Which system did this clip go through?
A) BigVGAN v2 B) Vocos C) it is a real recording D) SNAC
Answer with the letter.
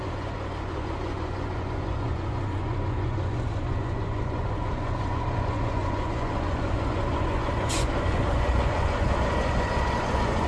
B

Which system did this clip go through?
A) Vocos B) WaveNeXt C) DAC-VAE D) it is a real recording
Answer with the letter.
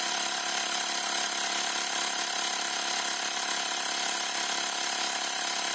D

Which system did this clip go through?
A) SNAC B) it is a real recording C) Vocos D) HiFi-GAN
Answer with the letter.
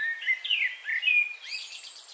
B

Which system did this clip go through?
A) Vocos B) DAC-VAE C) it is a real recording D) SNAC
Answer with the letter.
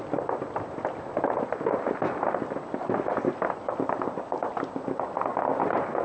C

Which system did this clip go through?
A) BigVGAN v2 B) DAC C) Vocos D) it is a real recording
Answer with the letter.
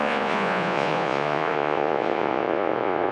C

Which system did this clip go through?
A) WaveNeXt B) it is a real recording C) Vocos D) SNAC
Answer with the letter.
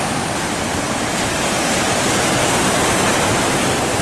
B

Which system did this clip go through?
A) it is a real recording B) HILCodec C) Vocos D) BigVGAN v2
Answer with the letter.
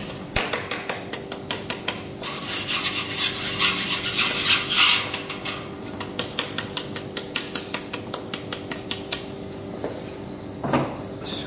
A